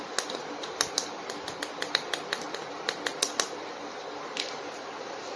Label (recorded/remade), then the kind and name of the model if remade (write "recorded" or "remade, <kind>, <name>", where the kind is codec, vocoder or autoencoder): recorded